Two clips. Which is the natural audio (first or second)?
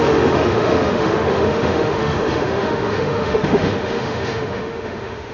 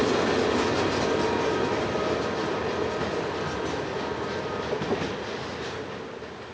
second